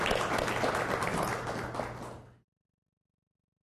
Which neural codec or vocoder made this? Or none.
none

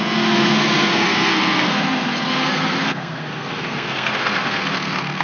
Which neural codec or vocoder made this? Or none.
codec, SNAC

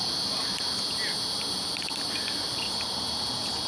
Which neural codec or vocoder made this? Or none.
none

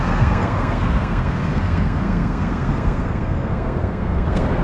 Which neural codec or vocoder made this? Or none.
codec, SNAC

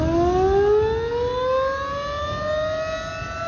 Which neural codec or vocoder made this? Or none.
none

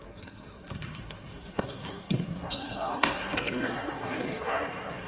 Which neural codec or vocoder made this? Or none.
codec, SNAC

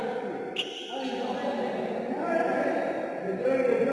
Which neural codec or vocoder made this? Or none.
none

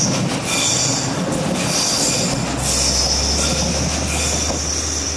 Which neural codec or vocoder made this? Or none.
none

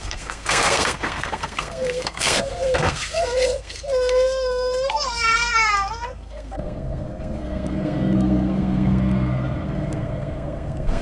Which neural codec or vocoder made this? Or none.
codec, SNAC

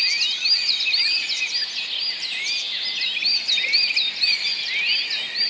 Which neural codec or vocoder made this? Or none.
none